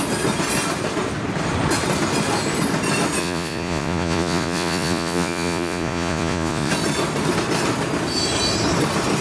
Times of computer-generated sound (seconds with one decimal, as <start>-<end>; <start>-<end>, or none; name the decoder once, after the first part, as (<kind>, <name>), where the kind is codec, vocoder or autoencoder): 3.2-6.7 (vocoder, Vocos)